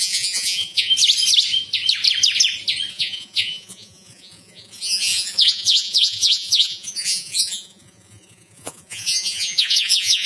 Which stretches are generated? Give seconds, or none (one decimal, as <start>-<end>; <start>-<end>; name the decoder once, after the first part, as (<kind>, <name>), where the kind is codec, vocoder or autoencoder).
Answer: 0.0-0.9 (vocoder, Vocos); 2.9-10.3

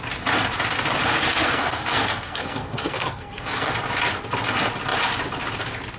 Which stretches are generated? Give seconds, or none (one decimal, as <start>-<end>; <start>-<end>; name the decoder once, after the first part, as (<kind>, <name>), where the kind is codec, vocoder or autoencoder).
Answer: 1.4-3.7 (codec, SNAC)

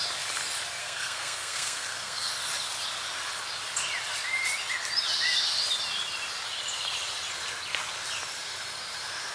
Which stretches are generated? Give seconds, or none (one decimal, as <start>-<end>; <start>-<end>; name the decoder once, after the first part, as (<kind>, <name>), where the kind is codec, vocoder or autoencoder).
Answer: 0.8-2.3 (codec, SNAC)

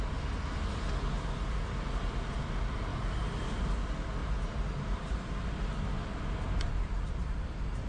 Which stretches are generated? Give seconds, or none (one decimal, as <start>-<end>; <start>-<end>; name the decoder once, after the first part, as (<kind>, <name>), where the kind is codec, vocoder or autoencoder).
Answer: 4.2-5.6 (vocoder, BigVGAN v2); 6.0-6.7; 7.2-7.9

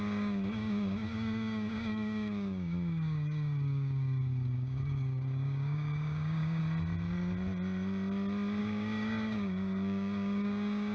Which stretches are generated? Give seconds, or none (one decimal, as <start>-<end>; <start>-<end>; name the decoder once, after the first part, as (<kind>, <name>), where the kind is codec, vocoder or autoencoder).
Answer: 0.0-6.6 (codec, DAC); 8.6-10.9

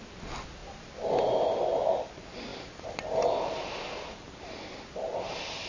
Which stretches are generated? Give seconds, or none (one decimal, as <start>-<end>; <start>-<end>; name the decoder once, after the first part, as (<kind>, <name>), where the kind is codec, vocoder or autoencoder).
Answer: none